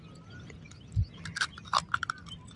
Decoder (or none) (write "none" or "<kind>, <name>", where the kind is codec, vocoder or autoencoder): none